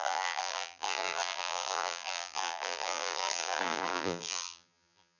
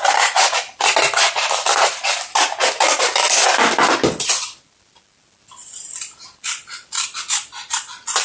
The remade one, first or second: first